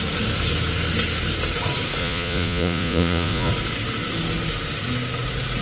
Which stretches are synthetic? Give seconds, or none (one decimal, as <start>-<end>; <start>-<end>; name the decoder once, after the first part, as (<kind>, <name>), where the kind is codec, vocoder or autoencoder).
2.0-3.5 (vocoder, Vocos)